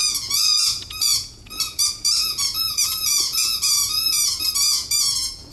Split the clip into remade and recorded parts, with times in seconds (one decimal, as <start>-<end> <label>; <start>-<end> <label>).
0.0-5.5 remade